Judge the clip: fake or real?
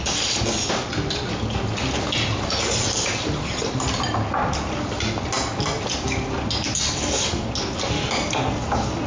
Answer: real